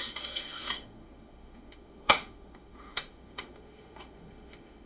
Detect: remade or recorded remade